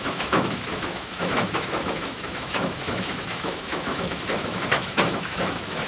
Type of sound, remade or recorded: remade